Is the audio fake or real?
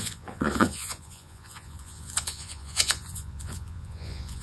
fake